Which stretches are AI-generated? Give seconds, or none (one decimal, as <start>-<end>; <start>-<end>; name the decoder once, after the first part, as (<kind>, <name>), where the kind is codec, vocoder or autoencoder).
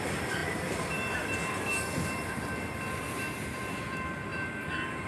0.0-4.3 (vocoder, BigVGAN v2)